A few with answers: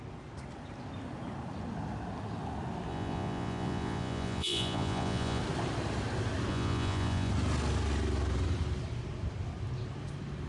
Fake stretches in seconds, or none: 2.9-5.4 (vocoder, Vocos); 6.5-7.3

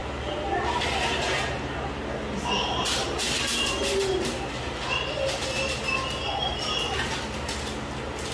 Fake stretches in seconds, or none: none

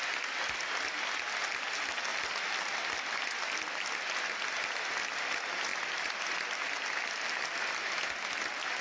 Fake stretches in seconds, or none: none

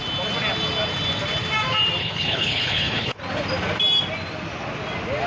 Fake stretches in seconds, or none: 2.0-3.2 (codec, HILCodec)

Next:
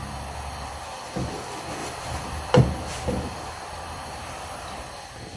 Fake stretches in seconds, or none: 1.8-2.6 (vocoder, BigVGAN v2); 4.0-4.8

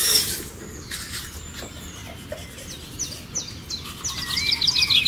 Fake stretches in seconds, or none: 0.0-1.2 (codec, DAC)

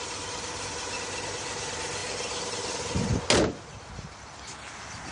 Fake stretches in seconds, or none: none

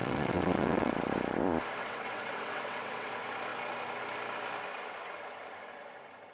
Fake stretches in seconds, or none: 0.0-0.9 (vocoder, WaveNeXt); 1.8-3.1